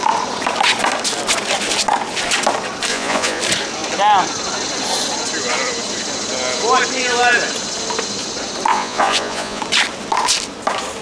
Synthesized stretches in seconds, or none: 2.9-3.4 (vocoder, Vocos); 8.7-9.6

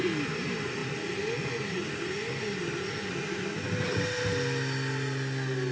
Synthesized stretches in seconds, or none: none

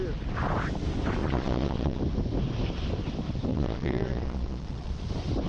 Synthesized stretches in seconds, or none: 1.2-2.0 (vocoder, Vocos); 3.5-4.9

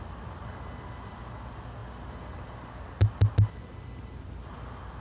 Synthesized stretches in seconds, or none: none

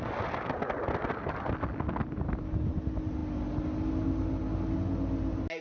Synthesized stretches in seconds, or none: none